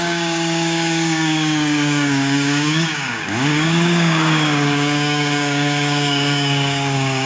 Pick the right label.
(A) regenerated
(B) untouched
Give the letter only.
A